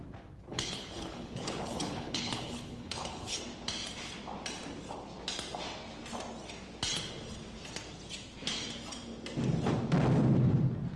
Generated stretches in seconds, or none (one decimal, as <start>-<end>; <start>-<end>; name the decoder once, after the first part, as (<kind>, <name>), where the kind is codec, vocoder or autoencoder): 0.5-3.4 (codec, HILCodec)